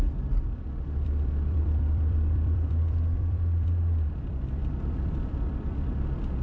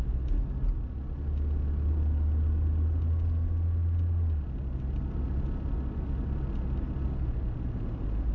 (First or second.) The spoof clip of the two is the first